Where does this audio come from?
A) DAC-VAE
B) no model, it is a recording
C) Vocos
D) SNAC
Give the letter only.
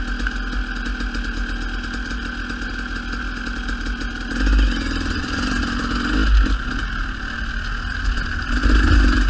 B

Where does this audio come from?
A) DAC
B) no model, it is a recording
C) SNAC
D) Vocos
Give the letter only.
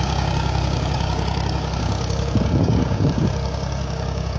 A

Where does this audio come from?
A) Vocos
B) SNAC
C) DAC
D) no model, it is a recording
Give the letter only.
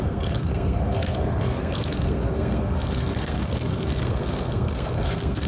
B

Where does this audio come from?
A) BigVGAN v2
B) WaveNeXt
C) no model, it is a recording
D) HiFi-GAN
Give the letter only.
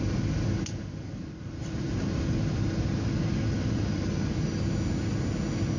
C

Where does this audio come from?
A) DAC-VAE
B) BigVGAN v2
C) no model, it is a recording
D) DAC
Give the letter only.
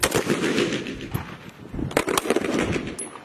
C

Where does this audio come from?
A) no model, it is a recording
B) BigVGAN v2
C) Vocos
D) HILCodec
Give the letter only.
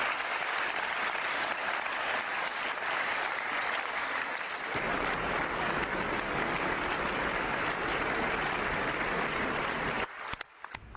A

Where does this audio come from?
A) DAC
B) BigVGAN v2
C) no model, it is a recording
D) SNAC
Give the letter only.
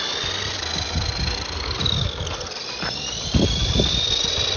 C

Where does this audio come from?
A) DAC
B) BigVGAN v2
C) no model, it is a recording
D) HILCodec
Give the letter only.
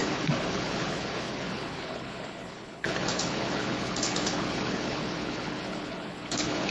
D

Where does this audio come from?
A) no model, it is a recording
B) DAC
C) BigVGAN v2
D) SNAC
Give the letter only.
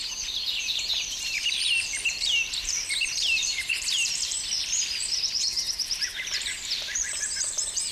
C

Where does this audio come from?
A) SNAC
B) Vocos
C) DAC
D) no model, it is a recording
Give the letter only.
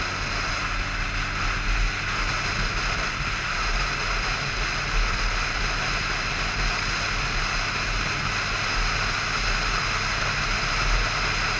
D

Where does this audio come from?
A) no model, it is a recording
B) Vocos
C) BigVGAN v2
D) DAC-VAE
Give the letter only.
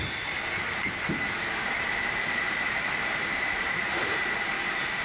C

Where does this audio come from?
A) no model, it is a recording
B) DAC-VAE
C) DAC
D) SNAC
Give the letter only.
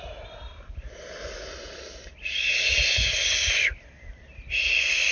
A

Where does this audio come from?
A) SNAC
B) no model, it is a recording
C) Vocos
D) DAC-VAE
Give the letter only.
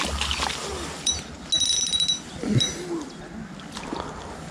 B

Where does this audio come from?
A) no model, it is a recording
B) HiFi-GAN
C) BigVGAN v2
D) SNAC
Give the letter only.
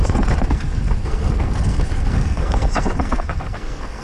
D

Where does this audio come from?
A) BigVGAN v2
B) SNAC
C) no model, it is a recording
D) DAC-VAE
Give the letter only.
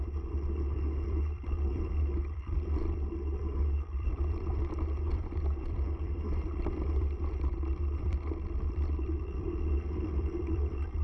A